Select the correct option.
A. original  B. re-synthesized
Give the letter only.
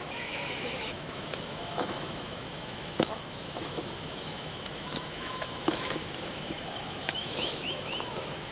B